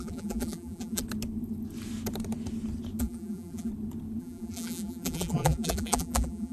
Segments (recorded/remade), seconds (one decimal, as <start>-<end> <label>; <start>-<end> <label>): 0.0-1.0 remade; 1.0-3.0 recorded; 3.0-3.7 remade; 3.7-4.2 recorded; 4.2-6.5 remade